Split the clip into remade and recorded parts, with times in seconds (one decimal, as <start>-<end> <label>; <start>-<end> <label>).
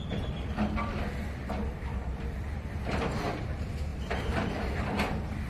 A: 0.0-5.5 remade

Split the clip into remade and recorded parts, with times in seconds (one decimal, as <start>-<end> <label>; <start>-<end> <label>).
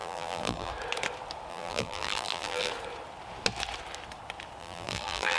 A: 0.0-0.7 remade; 0.7-1.5 recorded; 1.5-2.7 remade; 2.7-4.6 recorded; 4.6-5.4 remade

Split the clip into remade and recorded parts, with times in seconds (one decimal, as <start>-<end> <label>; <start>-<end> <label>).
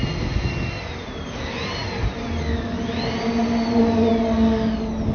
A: 0.0-0.6 remade; 0.6-3.4 recorded; 3.4-4.1 remade; 4.1-5.1 recorded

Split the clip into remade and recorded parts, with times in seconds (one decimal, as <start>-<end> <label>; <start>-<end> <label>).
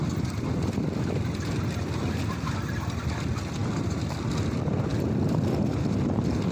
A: 0.0-6.5 recorded